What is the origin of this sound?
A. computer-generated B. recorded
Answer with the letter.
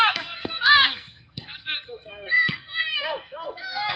A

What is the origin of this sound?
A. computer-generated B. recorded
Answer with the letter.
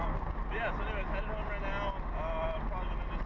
B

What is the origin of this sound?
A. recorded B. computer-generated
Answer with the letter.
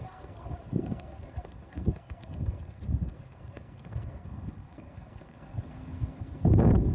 B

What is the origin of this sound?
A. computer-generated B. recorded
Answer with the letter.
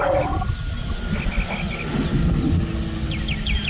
B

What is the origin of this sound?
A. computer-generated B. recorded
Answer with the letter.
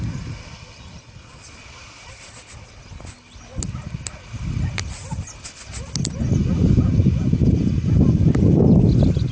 B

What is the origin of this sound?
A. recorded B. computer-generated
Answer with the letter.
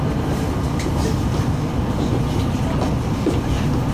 A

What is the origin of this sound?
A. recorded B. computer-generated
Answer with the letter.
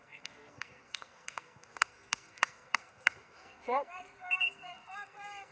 B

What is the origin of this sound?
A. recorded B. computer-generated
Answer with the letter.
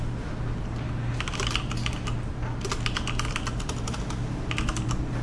A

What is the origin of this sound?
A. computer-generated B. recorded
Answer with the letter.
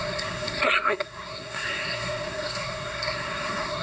A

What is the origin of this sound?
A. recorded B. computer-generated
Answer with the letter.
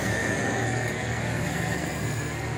B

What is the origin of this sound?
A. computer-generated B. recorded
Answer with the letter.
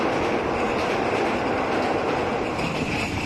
B